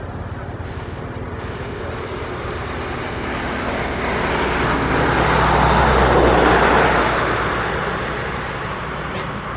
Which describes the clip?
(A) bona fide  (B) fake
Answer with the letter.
A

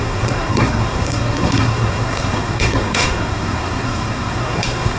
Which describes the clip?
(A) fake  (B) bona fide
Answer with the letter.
A